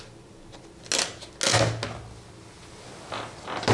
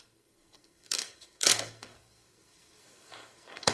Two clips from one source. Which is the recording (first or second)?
first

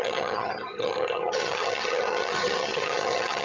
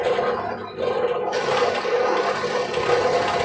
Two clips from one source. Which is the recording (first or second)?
second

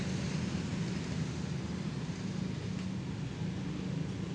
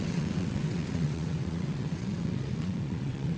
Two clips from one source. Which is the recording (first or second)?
first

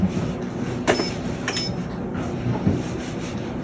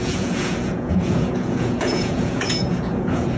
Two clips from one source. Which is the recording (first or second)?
first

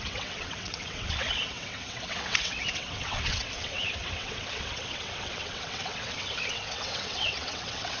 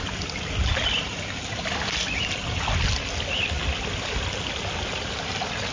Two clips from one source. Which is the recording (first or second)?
second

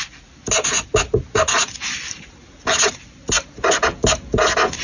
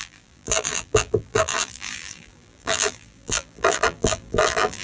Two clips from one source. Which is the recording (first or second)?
first